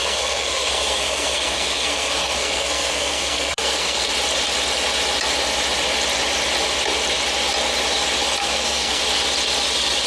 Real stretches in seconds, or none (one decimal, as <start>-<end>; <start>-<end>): 4.1-8.4; 9.0-10.1